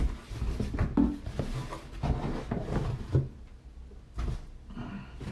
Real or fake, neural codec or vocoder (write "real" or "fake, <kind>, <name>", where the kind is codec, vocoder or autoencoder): real